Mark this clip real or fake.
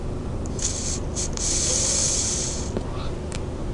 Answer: fake